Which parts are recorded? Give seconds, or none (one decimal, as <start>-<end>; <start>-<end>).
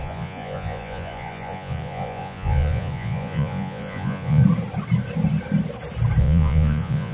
4.4-6.2